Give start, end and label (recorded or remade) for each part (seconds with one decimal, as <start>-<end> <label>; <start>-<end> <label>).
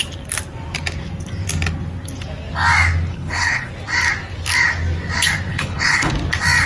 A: 0.0-3.1 recorded; 3.1-3.7 remade; 3.7-5.5 recorded; 5.5-6.1 remade; 6.1-6.7 recorded